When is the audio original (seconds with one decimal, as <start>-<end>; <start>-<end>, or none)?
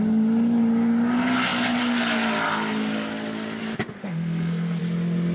0.0-4.0; 4.8-5.3